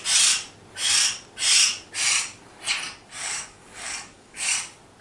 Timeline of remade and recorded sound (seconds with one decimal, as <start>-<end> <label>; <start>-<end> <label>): 0.0-3.2 recorded; 3.2-4.5 remade; 4.5-5.0 recorded